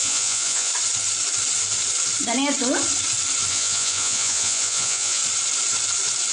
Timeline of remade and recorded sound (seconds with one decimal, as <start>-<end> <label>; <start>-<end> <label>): 0.0-0.7 remade; 0.7-3.5 recorded; 3.5-5.2 remade; 5.2-6.3 recorded

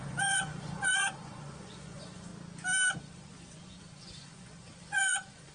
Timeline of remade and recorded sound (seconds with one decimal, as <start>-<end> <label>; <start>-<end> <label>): 0.0-2.3 remade; 2.3-3.0 recorded; 3.0-5.5 remade